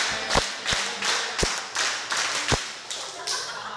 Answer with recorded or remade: recorded